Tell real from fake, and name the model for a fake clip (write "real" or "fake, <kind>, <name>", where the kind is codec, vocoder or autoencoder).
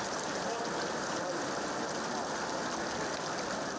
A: real